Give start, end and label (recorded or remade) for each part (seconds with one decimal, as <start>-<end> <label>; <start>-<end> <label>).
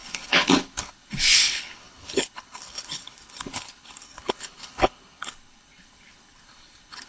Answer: 0.0-7.1 remade